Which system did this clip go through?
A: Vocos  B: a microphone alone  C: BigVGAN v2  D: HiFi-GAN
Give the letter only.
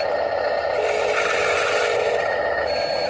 B